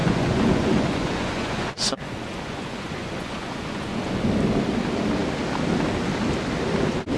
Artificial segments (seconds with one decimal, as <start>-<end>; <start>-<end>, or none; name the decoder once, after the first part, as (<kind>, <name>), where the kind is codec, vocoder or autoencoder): 0.0-4.3 (vocoder, Vocos)